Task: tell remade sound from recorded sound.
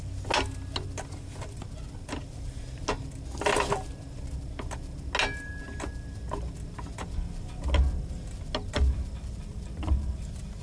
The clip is recorded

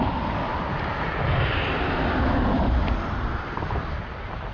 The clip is remade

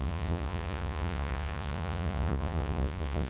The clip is remade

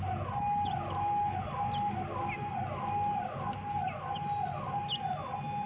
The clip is recorded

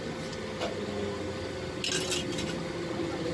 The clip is recorded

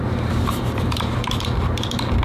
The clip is remade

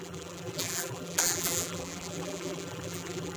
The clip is remade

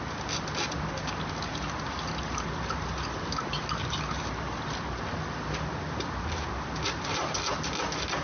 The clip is recorded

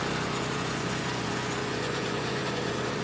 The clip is remade